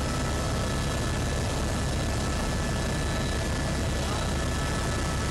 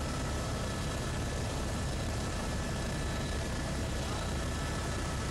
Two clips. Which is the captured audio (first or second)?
first